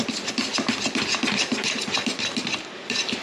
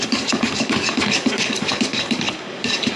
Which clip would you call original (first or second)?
first